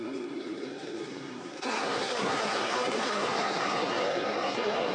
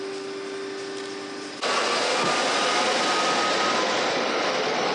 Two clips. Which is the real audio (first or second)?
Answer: second